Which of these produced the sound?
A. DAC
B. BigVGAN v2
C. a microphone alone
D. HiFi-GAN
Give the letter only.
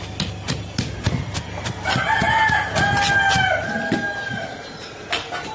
C